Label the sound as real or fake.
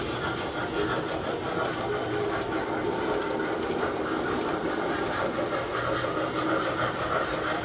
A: real